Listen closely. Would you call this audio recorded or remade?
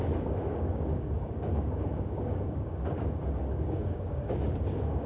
remade